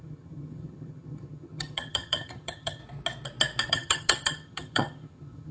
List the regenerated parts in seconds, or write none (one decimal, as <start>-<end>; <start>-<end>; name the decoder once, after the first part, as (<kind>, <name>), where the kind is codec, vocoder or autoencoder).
0.0-2.8 (vocoder, HiFi-GAN); 3.7-5.5